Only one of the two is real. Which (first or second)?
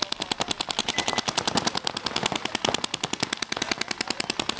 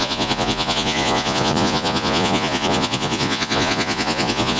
first